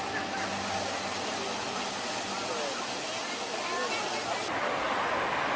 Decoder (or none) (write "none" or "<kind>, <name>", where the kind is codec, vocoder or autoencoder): none